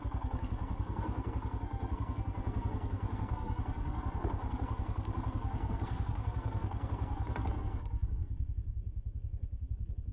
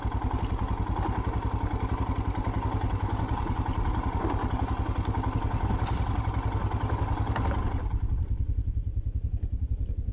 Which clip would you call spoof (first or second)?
first